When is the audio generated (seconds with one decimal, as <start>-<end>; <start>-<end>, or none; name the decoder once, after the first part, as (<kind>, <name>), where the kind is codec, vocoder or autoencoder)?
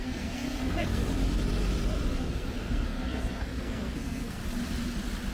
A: 0.0-1.0 (codec, SNAC); 2.1-4.4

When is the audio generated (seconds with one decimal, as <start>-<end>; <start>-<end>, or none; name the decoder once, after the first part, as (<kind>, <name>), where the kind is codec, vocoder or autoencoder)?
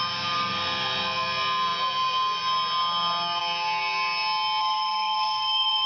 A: 4.6-5.9 (codec, SNAC)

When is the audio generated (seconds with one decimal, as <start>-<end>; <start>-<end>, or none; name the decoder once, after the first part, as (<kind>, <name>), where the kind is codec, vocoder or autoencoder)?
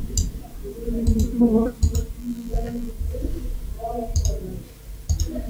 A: 2.2-2.9 (vocoder, BigVGAN v2)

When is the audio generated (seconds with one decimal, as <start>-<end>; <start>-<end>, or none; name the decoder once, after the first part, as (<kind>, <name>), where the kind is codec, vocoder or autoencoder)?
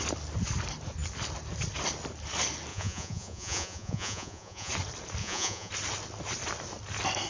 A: 2.7-4.7 (vocoder, Vocos); 5.2-5.7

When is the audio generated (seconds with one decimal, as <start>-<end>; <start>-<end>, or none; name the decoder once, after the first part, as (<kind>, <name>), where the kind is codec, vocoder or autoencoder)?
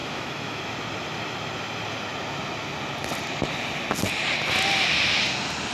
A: 0.0-0.6 (autoencoder, DAC-VAE)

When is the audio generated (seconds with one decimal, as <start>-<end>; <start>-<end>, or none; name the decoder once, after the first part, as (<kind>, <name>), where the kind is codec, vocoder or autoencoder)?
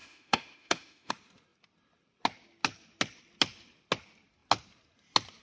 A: 0.0-1.1 (autoencoder, DAC-VAE)